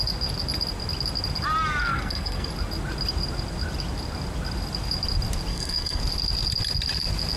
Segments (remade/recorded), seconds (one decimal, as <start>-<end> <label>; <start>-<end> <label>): 0.0-1.8 recorded; 1.8-2.5 remade; 2.5-5.5 recorded; 5.5-6.0 remade; 6.0-7.4 recorded

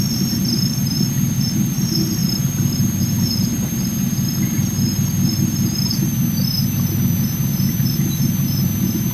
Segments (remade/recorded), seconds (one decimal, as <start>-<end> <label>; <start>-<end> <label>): 0.0-2.2 recorded; 2.2-3.0 remade; 3.0-9.1 recorded